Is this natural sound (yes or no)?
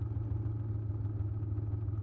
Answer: yes